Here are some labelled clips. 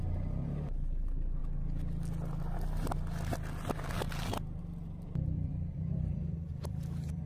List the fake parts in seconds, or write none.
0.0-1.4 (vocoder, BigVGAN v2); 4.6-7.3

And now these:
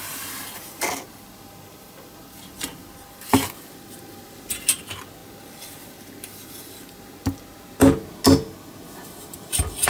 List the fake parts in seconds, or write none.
none

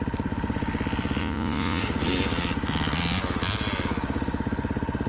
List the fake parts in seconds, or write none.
1.2-1.8 (vocoder, Vocos)

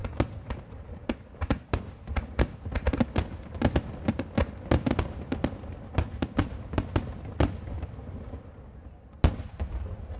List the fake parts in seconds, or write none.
none

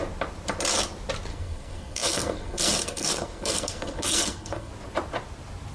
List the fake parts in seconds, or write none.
1.3-4.7 (codec, SNAC)

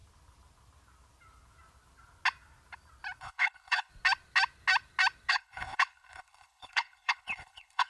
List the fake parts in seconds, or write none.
3.2-3.9 (codec, HILCodec); 5.3-7.9

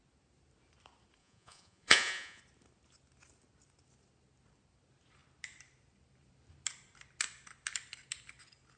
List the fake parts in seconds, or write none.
1.2-2.4 (vocoder, Vocos)

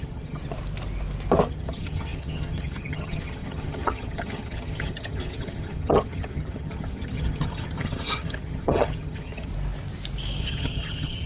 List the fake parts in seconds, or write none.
0.0-0.4 (vocoder, HiFi-GAN); 1.5-9.5; 10.4-11.3